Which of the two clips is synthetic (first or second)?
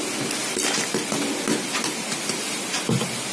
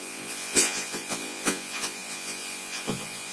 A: second